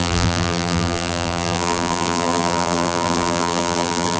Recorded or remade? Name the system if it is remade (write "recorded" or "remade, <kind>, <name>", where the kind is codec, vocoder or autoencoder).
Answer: remade, vocoder, BigVGAN v2